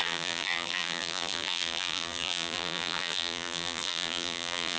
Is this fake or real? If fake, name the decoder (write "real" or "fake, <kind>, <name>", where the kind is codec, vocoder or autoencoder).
fake, vocoder, BigVGAN v2